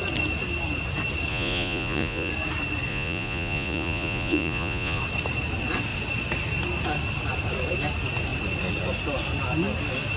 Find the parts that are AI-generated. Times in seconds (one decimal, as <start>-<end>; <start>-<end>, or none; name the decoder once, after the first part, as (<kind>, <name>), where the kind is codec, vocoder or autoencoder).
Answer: 1.3-2.3 (vocoder, Vocos); 2.9-5.0

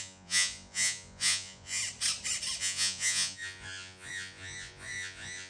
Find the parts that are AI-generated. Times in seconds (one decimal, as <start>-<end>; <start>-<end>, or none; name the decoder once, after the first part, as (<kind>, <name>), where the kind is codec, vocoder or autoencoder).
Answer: 0.0-1.8 (vocoder, Vocos); 2.6-5.5

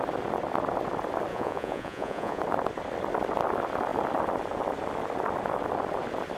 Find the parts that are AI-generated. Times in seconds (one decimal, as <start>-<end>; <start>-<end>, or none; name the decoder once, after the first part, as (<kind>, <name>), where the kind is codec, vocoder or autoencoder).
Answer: 1.3-2.4 (vocoder, Vocos)

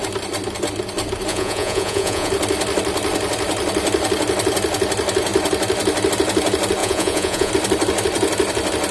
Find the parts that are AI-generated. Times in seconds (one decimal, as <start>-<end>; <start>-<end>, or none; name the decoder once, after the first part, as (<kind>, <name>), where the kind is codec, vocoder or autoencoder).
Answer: 1.3-2.3 (vocoder, Vocos); 6.8-7.5

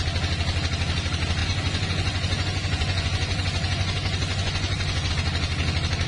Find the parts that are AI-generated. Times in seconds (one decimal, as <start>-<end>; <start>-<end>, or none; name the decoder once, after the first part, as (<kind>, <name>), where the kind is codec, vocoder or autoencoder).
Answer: 1.4-5.1 (vocoder, Vocos)

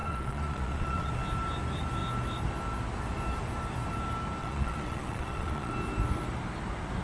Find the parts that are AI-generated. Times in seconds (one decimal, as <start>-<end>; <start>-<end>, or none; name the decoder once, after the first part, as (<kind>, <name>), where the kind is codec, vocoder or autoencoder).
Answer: 0.0-1.1 (vocoder, Vocos); 4.4-5.7

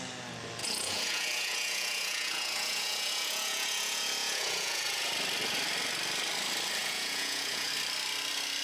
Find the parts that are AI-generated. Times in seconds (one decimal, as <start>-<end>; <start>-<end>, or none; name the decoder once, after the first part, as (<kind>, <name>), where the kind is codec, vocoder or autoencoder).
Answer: 0.6-5.1 (vocoder, Vocos); 6.8-7.7